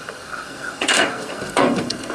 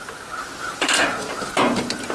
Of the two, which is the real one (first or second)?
second